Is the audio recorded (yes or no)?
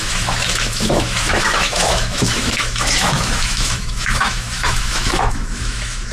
no